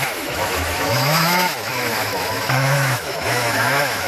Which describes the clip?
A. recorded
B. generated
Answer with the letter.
B